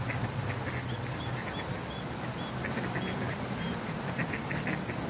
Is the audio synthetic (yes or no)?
no